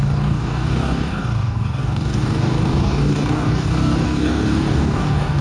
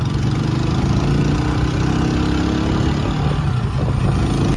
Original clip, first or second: second